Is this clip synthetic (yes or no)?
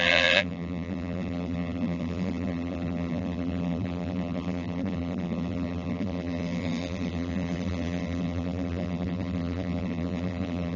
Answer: yes